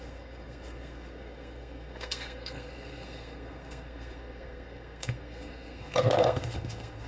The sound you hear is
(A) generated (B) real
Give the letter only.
A